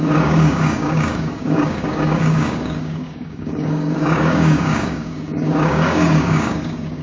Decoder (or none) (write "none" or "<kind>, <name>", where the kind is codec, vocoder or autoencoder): codec, DAC